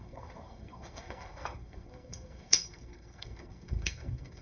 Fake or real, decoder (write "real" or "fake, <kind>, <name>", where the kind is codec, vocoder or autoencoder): fake, codec, SNAC